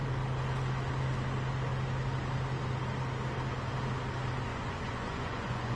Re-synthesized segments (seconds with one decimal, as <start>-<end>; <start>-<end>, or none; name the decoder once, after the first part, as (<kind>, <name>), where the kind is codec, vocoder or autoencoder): 4.5-5.8 (vocoder, Vocos)